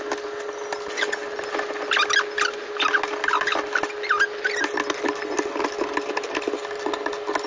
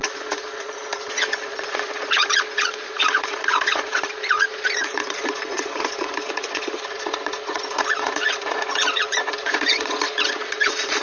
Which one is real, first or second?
first